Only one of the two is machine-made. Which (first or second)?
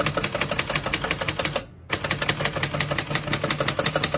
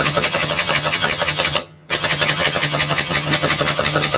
second